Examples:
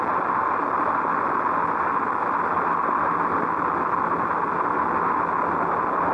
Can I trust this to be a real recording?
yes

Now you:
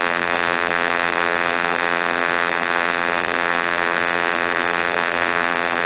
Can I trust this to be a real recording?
no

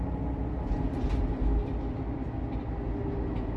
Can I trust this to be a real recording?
yes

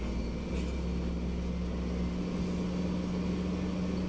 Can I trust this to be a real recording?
yes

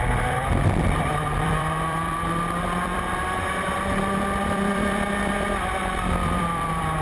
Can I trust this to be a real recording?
no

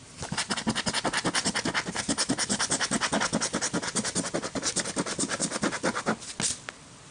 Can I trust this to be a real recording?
yes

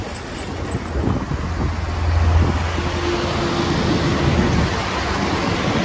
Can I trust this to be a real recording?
yes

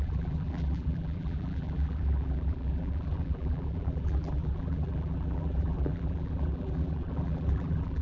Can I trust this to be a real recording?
no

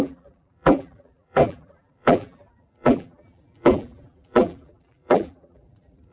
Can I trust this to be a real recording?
no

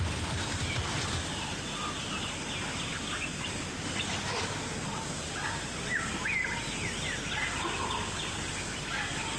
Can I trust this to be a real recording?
yes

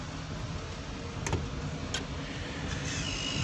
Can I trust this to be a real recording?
yes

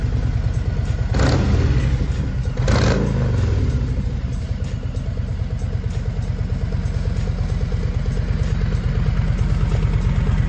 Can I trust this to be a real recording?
yes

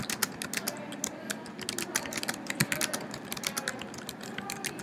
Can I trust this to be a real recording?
yes